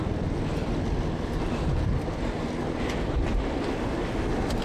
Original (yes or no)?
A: yes